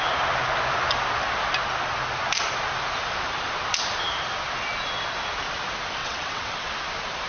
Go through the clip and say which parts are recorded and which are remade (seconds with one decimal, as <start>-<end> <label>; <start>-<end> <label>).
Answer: 0.0-6.0 recorded; 6.0-6.7 remade; 6.7-7.3 recorded